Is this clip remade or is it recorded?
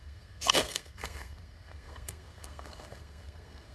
remade